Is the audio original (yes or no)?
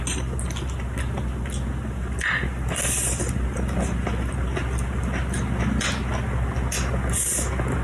yes